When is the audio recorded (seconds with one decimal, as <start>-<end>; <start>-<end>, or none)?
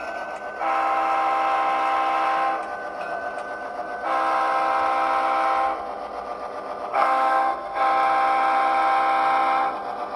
0.0-6.9; 7.8-10.2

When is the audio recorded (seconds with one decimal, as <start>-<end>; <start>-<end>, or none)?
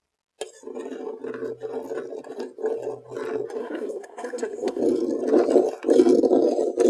0.0-3.6; 4.8-6.9